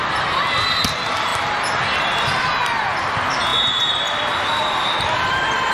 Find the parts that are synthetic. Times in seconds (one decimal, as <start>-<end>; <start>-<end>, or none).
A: none